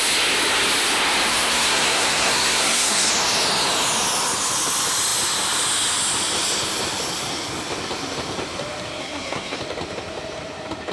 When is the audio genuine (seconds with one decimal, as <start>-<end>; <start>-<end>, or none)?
0.0-1.3; 3.1-9.0; 9.6-10.9